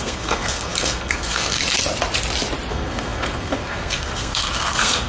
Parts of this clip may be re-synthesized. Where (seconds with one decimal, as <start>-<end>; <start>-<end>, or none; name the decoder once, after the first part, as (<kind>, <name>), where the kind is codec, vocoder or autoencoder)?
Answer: 0.0-1.6 (codec, SNAC); 2.7-5.1